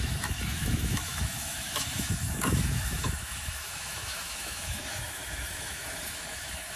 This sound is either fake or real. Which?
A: fake